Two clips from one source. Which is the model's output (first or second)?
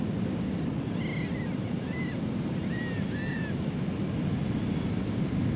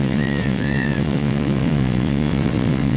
second